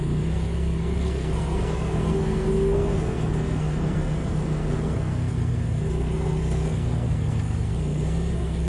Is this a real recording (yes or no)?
no